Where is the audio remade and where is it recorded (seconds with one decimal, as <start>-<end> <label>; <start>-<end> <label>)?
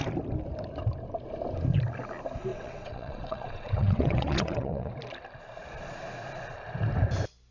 0.0-2.5 recorded; 2.5-4.9 remade; 4.9-7.5 recorded